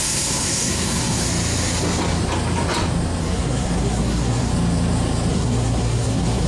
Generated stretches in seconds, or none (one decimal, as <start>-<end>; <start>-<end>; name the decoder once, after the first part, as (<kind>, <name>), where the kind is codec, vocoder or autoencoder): 0.0-1.3 (codec, SNAC); 3.2-4.5; 5.3-6.5